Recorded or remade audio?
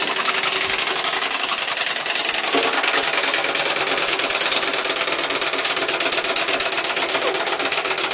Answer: recorded